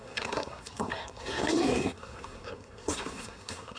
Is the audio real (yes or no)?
no